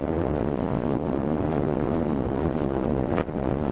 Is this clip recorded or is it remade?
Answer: remade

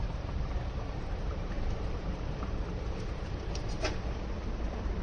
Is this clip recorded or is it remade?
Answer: remade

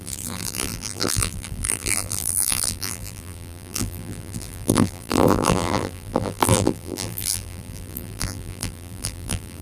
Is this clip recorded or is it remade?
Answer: remade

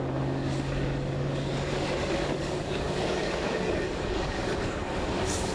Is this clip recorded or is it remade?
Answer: remade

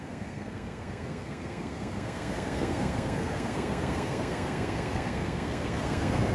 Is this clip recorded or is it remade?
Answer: remade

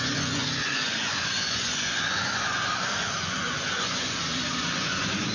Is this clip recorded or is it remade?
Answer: remade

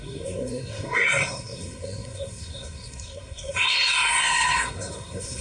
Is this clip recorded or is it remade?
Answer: remade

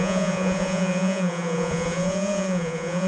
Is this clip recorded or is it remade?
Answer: remade